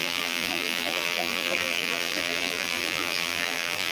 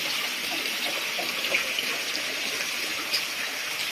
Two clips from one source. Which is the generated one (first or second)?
first